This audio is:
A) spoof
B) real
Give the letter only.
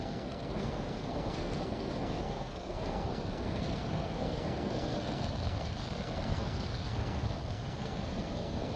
A